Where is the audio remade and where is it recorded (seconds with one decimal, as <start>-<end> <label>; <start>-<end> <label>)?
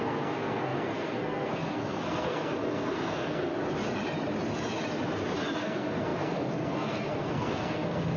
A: 0.0-3.5 remade; 3.5-5.6 recorded; 5.6-8.2 remade